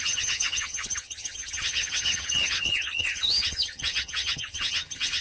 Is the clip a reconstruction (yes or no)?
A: yes